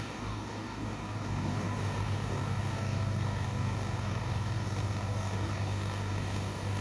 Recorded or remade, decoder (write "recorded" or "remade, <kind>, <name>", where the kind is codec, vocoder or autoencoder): remade, codec, DAC